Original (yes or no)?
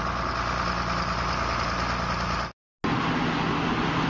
yes